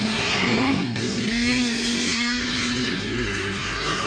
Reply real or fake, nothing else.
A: fake